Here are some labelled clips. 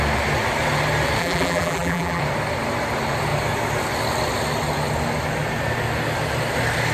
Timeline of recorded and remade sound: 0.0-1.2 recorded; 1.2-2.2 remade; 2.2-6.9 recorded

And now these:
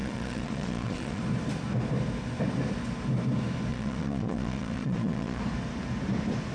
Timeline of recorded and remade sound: 0.0-1.2 remade; 1.2-3.7 recorded; 3.7-5.4 remade; 5.4-6.5 recorded